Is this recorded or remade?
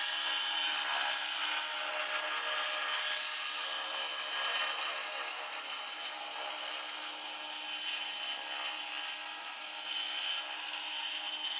recorded